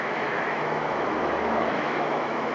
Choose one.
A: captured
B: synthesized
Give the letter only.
B